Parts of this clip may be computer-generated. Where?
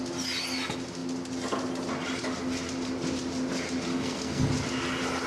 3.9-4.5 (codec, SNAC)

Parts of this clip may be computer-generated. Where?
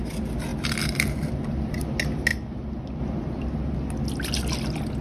none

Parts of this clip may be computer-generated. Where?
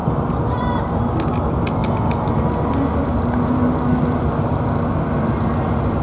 none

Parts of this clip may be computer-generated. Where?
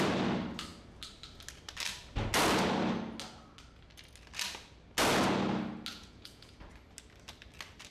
5.9-6.5 (vocoder, Vocos)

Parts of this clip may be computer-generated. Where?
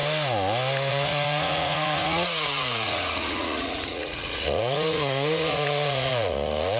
0.9-6.8 (vocoder, Vocos)